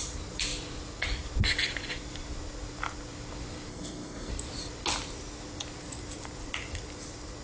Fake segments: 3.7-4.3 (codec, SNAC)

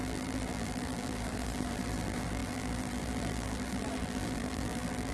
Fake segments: 0.0-5.1 (vocoder, BigVGAN v2)

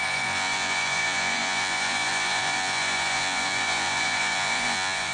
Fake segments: 0.0-5.1 (vocoder, Vocos)

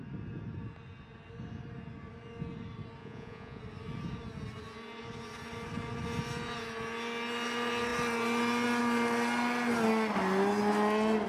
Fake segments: 3.0-3.6 (vocoder, Vocos)

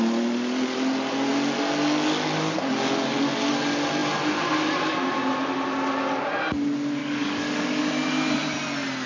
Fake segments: 7.0-7.8 (codec, DAC)

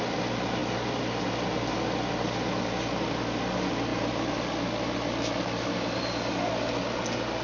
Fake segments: none

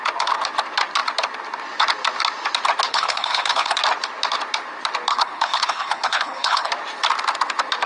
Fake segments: 2.9-3.8 (codec, HILCodec); 5.1-6.7